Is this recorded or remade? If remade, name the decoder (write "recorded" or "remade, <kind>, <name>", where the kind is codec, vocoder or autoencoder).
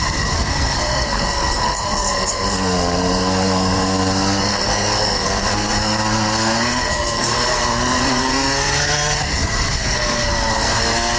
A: remade, codec, SNAC